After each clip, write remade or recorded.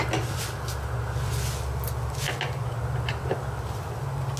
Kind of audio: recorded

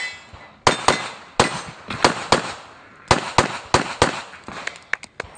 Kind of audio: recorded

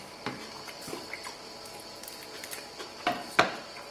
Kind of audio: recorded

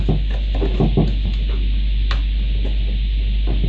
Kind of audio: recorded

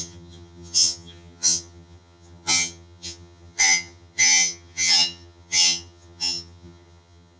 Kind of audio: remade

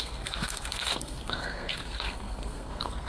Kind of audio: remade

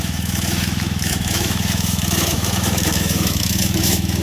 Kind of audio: remade